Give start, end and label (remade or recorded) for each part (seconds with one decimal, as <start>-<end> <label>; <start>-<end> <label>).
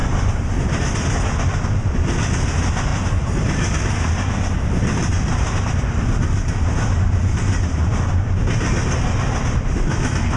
0.0-0.8 remade; 0.8-2.9 recorded; 2.9-5.7 remade; 5.7-7.2 recorded; 7.2-7.9 remade; 7.9-10.4 recorded